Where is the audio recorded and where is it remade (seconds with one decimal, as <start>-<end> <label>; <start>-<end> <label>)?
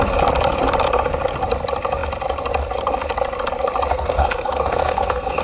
0.0-3.9 recorded; 3.9-5.4 remade